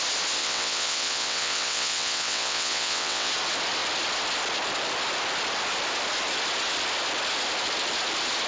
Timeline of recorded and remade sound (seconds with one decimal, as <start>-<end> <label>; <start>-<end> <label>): 0.0-0.4 recorded; 0.4-3.3 remade; 3.3-8.5 recorded